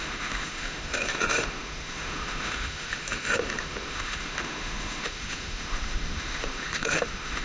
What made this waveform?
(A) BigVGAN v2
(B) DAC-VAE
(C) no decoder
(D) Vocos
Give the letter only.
B